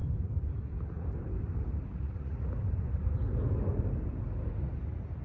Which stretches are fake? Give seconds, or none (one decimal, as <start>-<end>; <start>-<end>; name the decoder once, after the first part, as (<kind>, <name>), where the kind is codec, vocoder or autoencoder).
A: 1.9-2.5 (vocoder, Vocos)